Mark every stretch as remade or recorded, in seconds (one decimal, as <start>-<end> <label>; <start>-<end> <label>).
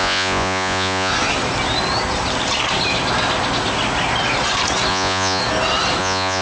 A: 0.0-1.1 remade; 1.1-4.9 recorded; 4.9-5.4 remade; 5.4-6.0 recorded; 6.0-6.4 remade